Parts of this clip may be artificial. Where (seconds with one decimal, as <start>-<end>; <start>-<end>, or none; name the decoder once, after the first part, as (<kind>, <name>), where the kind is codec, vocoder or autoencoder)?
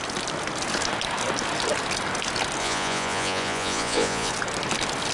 2.6-4.3 (vocoder, Vocos)